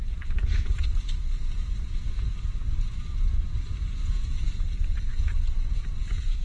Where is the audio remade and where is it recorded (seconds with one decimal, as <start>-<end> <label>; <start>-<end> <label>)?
0.0-6.4 remade